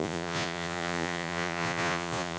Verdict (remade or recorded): remade